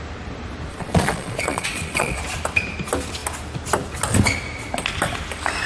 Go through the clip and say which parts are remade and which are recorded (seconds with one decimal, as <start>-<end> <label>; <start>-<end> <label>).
0.0-0.7 recorded; 0.7-2.2 remade; 2.2-5.7 recorded